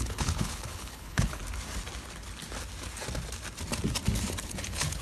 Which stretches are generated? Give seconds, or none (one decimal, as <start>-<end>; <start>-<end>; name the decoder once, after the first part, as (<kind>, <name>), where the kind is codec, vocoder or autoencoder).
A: 0.0-1.4 (codec, HILCodec); 4.4-5.0